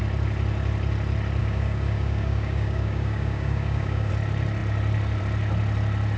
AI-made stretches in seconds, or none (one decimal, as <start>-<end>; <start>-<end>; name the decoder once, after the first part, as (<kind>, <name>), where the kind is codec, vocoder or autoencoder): 1.4-4.1 (codec, DAC)

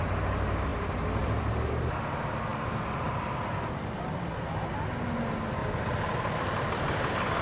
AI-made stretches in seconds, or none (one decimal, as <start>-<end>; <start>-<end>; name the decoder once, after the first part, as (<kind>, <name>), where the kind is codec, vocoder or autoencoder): 0.7-1.5 (vocoder, BigVGAN v2); 2.5-4.0; 5.6-7.4

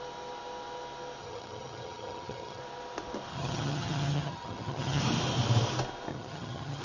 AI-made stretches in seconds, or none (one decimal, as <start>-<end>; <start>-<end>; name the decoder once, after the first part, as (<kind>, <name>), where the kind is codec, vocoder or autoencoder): 1.2-2.6 (vocoder, HiFi-GAN); 3.3-5.0; 6.1-6.8

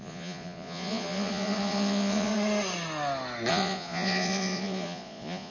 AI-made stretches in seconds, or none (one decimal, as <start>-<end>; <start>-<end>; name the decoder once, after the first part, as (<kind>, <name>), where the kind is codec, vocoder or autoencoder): 0.0-2.3 (vocoder, Vocos); 3.5-5.5

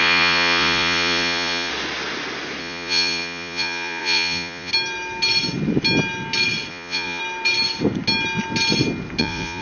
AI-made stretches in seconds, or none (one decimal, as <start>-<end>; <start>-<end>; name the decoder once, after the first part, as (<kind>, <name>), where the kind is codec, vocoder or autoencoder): 0.0-1.7 (vocoder, Vocos); 2.6-4.7; 6.7-7.2; 9.2-9.6

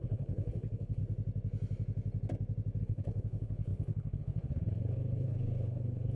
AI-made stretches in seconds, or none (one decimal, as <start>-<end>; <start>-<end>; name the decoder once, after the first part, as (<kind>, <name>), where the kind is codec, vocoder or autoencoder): 0.0-1.0 (codec, HILCodec); 2.8-6.2